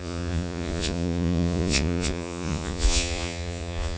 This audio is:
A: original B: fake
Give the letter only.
B